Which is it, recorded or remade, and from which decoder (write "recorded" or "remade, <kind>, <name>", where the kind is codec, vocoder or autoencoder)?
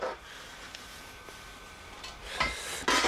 recorded